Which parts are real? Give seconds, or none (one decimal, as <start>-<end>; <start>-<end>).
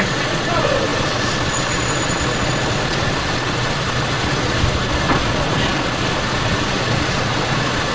none